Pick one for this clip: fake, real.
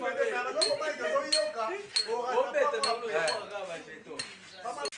real